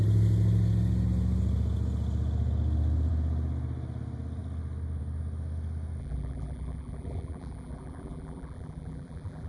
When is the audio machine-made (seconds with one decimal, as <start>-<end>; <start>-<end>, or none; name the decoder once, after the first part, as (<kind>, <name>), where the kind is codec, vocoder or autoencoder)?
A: 6.0-9.5 (vocoder, BigVGAN v2)